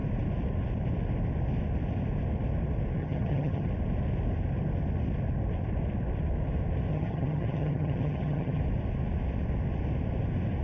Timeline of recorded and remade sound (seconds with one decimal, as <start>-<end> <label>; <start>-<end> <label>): 0.0-3.0 recorded; 3.0-3.7 remade; 3.7-6.9 recorded; 6.9-8.6 remade; 8.6-10.6 recorded